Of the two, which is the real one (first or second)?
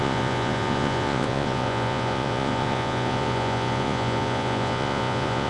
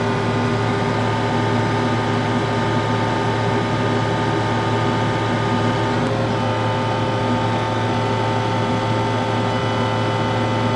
second